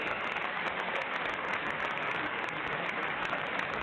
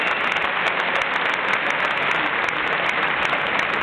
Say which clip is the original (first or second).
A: second